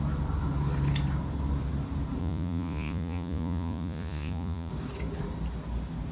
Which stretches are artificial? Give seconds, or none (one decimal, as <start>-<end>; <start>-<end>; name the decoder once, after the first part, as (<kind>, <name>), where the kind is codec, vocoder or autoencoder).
2.2-4.7 (vocoder, Vocos)